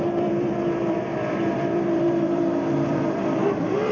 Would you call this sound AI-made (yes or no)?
yes